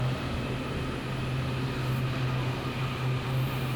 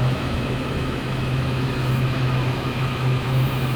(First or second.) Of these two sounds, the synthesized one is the second